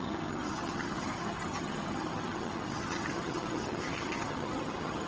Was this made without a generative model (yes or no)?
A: no